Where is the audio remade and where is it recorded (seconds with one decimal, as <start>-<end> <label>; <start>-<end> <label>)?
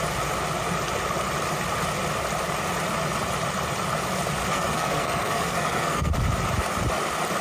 0.0-4.4 recorded; 4.4-6.1 remade; 6.1-7.4 recorded